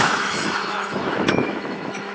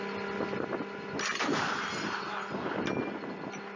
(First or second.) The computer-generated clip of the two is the first